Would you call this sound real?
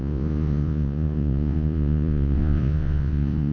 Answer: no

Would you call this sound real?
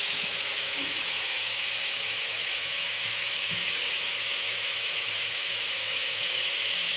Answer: no